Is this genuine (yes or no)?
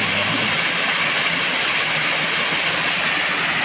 yes